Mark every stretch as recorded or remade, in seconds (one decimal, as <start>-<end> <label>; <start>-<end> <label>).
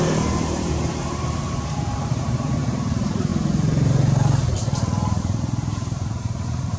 0.0-3.3 remade; 3.3-5.2 recorded; 5.2-6.8 remade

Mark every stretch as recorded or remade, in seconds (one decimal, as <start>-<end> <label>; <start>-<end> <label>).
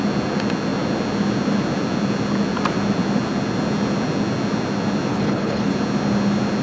0.0-5.1 recorded; 5.1-5.7 remade; 5.7-6.6 recorded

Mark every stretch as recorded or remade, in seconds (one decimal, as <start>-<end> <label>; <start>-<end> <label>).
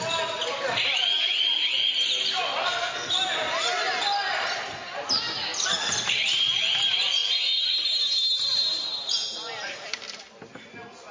0.0-2.6 recorded; 2.6-3.1 remade; 3.1-11.1 recorded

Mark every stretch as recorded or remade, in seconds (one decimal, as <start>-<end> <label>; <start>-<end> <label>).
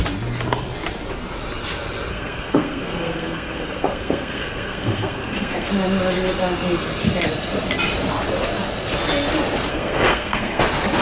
0.0-2.1 recorded; 2.1-5.7 remade; 5.7-9.7 recorded; 9.7-10.6 remade; 10.6-11.0 recorded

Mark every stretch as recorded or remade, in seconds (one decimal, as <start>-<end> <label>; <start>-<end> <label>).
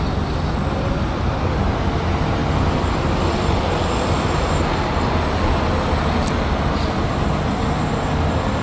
0.0-2.4 recorded; 2.4-3.8 remade; 3.8-8.6 recorded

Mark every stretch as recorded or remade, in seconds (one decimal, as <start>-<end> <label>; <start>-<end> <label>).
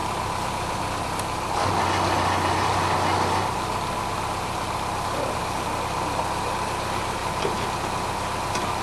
0.0-8.8 recorded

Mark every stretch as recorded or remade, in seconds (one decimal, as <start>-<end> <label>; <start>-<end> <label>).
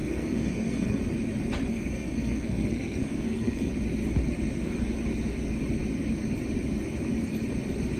0.0-1.0 remade; 1.0-1.7 recorded; 1.7-3.7 remade; 3.7-8.0 recorded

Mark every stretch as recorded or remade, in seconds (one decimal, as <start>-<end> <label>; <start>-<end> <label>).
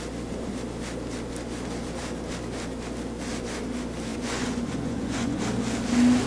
0.0-4.1 recorded; 4.1-5.4 remade; 5.4-6.3 recorded